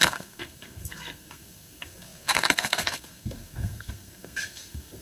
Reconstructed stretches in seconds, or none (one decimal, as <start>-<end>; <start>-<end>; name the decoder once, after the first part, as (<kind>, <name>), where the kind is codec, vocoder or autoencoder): 0.0-5.0 (codec, SNAC)